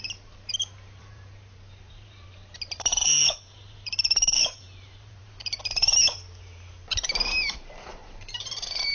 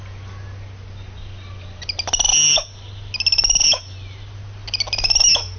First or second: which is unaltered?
second